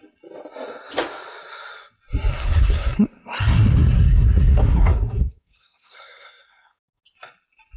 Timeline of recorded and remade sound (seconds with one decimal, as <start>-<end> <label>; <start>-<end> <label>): 0.0-2.3 recorded; 2.3-7.0 remade; 7.0-7.8 recorded